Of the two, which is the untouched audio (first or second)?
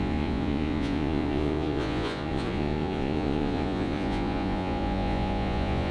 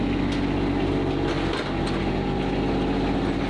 second